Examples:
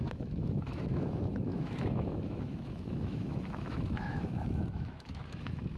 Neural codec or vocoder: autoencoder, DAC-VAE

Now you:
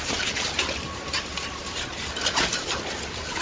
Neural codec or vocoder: none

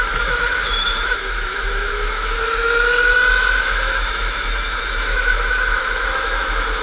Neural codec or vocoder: autoencoder, DAC-VAE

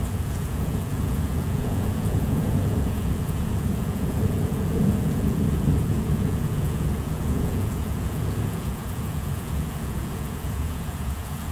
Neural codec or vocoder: vocoder, Vocos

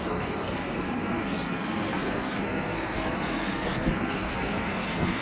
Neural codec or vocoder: codec, SNAC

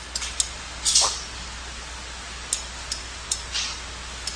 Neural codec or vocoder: none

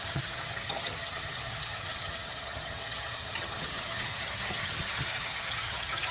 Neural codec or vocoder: vocoder, HiFi-GAN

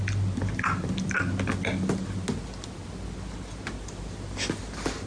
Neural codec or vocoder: none